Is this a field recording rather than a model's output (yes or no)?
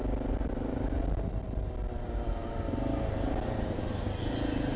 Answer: yes